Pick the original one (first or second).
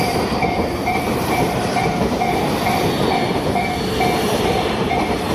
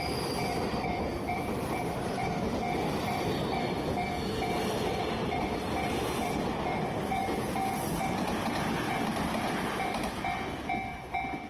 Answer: second